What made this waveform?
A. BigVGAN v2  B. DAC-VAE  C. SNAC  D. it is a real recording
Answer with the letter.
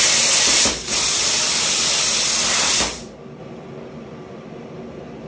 A